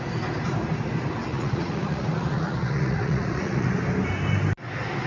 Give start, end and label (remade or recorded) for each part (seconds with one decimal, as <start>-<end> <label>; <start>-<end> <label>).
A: 0.0-1.3 recorded; 1.3-3.7 remade; 3.7-5.1 recorded